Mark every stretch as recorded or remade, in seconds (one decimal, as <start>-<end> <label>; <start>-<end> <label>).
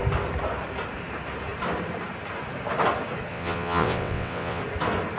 0.0-3.3 recorded; 3.3-4.6 remade; 4.6-5.2 recorded